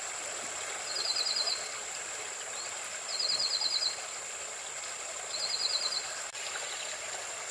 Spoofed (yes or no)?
no